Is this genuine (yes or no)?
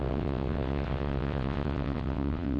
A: no